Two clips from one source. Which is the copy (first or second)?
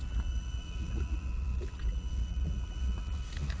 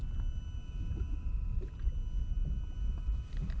first